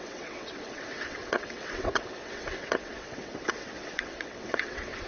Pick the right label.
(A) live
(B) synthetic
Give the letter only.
B